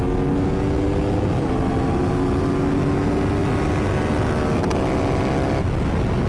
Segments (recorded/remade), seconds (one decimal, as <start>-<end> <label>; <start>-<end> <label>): 0.0-6.3 recorded

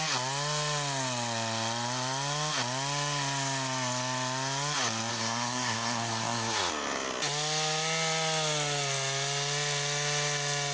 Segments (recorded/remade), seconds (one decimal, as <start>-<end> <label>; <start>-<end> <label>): 0.0-5.1 recorded; 5.1-6.7 remade; 6.7-10.7 recorded

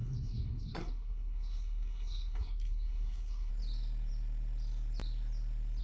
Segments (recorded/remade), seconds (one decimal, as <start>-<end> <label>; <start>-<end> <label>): 0.0-3.5 remade; 3.5-5.8 recorded

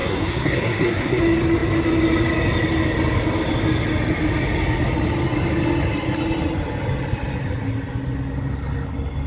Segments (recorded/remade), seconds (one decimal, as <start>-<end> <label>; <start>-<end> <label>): 0.0-1.2 remade; 1.2-9.3 recorded

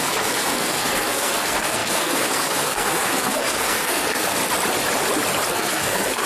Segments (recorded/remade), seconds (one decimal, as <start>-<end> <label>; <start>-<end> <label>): 0.0-4.4 remade; 4.4-5.5 recorded; 5.5-6.3 remade